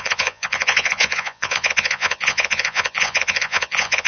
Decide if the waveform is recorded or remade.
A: remade